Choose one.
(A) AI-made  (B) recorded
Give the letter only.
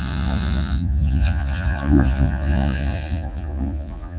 A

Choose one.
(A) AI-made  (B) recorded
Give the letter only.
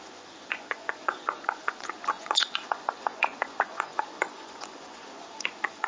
A